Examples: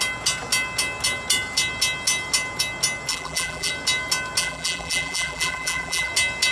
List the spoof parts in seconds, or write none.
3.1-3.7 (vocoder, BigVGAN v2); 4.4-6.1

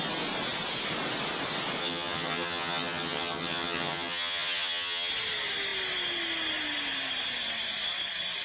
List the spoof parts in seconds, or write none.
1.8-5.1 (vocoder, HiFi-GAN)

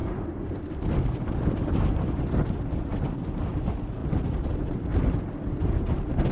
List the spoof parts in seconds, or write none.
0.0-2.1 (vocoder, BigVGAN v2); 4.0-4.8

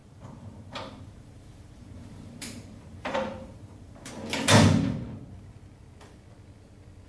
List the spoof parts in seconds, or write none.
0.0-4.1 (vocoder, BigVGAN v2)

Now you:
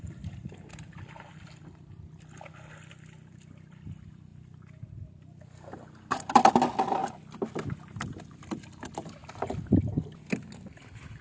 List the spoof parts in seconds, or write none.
1.6-2.9 (vocoder, BigVGAN v2); 4.3-6.5

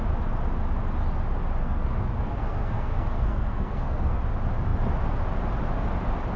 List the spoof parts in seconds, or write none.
1.6-4.2 (codec, SNAC)

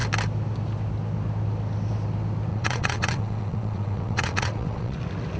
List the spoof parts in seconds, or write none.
2.5-5.0 (vocoder, WaveNeXt)

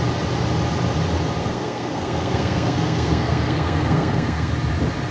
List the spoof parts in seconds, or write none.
1.4-4.5 (codec, SNAC)